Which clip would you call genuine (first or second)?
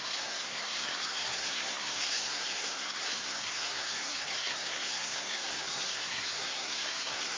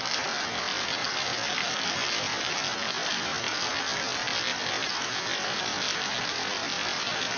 second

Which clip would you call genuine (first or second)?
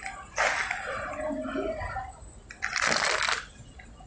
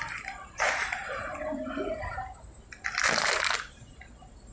first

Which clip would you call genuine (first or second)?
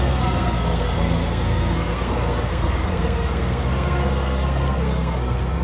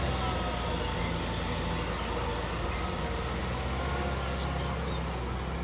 second